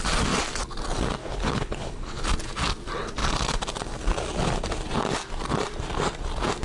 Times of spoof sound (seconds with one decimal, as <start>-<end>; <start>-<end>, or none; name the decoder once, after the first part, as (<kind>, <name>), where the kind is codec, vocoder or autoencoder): 1.2-2.2 (codec, HILCodec)